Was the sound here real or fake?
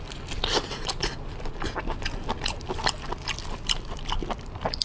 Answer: real